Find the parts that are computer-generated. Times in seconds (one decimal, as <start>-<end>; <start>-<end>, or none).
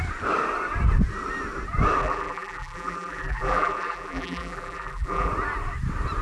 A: 2.0-5.3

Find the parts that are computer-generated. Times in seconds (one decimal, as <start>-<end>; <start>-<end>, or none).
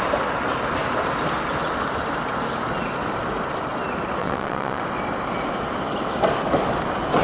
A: 4.2-4.8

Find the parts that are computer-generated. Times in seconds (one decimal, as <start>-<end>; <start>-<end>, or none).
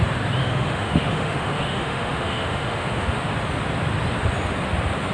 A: 0.4-3.3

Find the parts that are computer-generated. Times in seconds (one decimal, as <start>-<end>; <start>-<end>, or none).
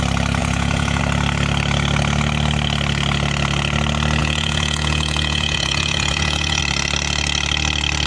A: 0.4-1.0; 4.2-6.6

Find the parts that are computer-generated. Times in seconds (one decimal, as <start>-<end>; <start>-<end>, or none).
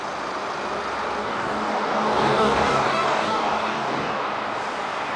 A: 1.2-4.3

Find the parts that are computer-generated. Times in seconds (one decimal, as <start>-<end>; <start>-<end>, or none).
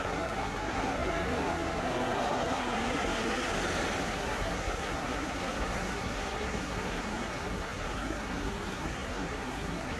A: 0.0-3.5; 4.0-10.0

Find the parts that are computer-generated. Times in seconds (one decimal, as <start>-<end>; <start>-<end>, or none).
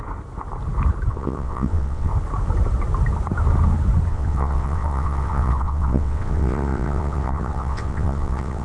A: 1.1-2.1; 4.1-8.6